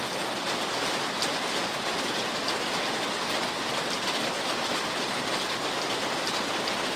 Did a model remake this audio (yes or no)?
no